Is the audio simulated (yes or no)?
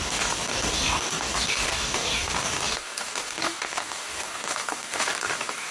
yes